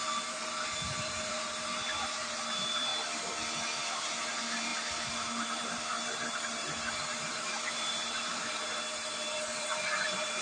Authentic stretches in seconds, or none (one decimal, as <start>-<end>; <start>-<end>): 2.9-4.0